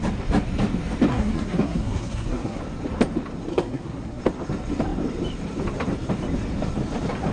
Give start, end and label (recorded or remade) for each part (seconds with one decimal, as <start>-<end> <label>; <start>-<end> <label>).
0.0-1.1 recorded; 1.1-2.6 remade; 2.6-3.5 recorded; 3.5-4.2 remade; 4.2-7.3 recorded